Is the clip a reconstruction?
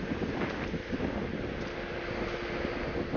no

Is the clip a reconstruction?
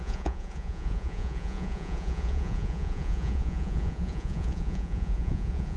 yes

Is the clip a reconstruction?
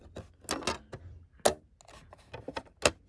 no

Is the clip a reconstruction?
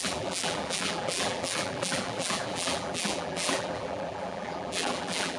yes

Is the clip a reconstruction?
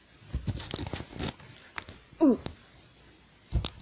no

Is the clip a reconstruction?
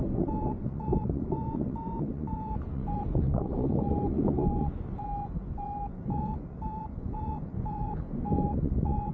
yes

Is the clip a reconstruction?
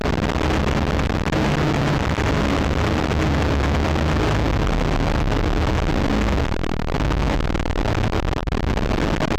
no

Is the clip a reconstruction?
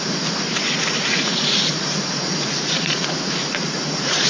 yes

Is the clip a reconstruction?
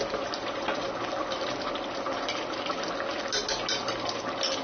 no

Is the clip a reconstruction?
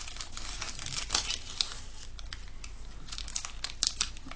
no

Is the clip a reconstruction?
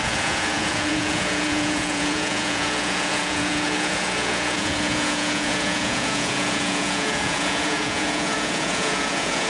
yes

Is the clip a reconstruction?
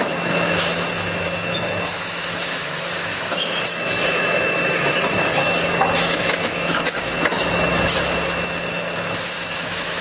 yes